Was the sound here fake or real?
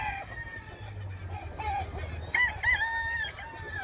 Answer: real